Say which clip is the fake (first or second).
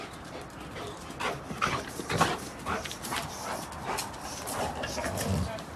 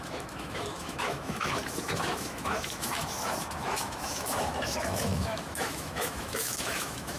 second